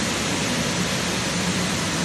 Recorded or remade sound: recorded